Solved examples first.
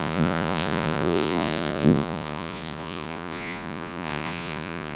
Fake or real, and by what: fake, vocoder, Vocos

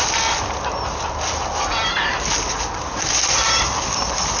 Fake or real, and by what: real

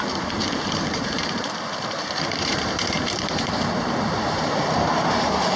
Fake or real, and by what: fake, vocoder, BigVGAN v2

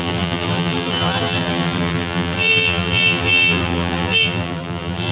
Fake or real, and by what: fake, vocoder, BigVGAN v2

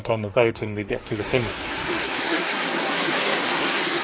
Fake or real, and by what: fake, codec, SNAC